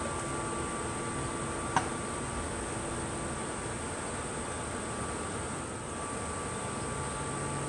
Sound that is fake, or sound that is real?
real